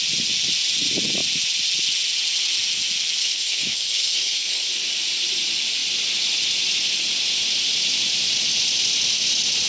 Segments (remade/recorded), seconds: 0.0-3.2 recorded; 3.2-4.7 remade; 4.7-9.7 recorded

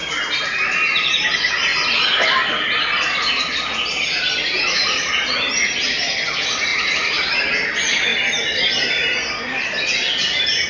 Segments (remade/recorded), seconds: 0.0-10.7 recorded

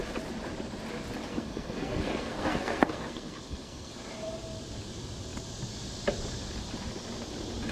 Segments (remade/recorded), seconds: 0.0-1.3 recorded; 1.3-3.9 remade; 3.9-7.7 recorded

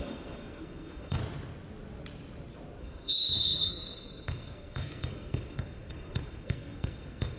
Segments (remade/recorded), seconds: 0.0-1.2 remade; 1.2-2.8 recorded; 2.8-7.4 remade

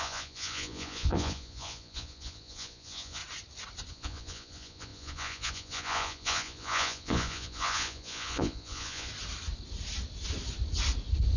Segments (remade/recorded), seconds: 0.0-3.2 remade; 3.2-3.9 recorded; 3.9-9.1 remade; 9.1-11.4 recorded

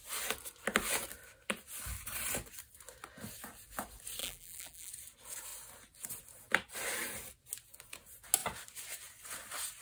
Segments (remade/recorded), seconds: 0.0-4.2 recorded; 4.2-4.9 remade; 4.9-9.8 recorded

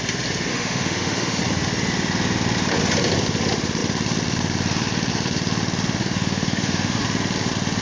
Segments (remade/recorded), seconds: 0.0-0.5 recorded; 0.5-1.4 remade; 1.4-6.0 recorded; 6.0-7.0 remade; 7.0-7.8 recorded

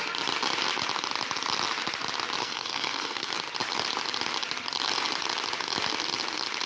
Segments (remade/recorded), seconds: 0.0-2.4 recorded; 2.4-3.3 remade; 3.3-6.7 recorded